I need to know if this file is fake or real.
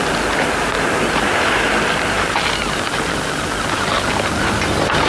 real